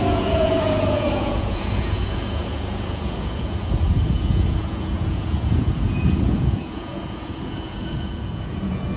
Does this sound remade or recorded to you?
remade